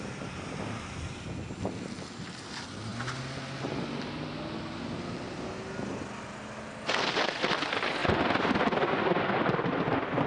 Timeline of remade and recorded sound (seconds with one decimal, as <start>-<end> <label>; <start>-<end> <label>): 0.0-10.3 recorded